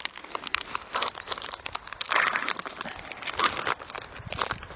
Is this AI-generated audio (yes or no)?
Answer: no